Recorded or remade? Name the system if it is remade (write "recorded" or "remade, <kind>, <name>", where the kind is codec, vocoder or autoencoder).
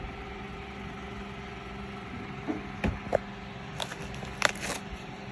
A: recorded